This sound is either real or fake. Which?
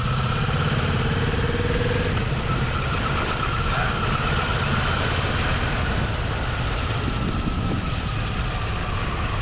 real